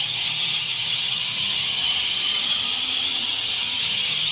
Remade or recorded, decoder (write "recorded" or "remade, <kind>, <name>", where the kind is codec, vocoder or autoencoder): remade, vocoder, HiFi-GAN